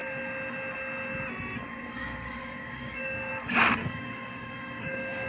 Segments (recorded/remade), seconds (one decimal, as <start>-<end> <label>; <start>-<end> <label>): 0.0-1.8 recorded; 1.8-3.3 remade; 3.3-3.8 recorded; 3.8-5.3 remade